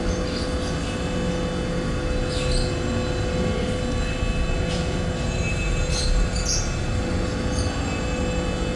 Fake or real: real